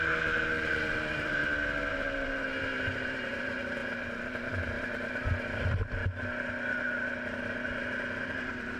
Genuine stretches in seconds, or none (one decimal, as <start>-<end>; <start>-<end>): 1.4-1.9; 6.0-7.4